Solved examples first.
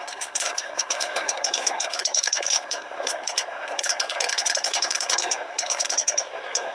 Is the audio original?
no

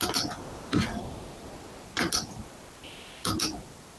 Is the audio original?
yes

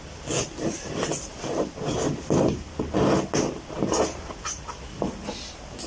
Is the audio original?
yes